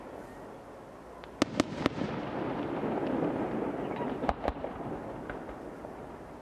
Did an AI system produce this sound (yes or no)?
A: no